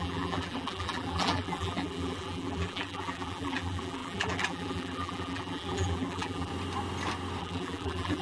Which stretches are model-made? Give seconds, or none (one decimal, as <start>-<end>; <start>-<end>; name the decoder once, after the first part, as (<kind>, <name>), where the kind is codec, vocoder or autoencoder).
0.0-6.5 (vocoder, BigVGAN v2); 7.4-8.2